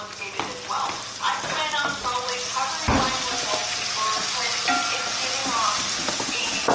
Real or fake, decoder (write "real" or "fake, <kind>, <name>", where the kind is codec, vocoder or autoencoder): real